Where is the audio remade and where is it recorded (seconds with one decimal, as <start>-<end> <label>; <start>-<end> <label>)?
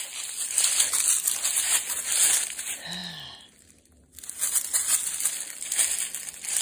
0.0-6.6 recorded